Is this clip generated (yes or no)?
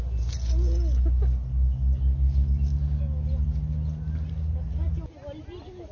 no